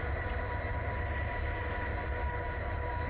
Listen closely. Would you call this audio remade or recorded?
remade